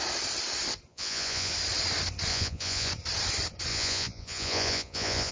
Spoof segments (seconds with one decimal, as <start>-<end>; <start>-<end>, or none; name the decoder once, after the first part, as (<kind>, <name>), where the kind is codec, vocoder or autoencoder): 0.9-1.5 (vocoder, Vocos); 2.3-2.9; 3.7-5.3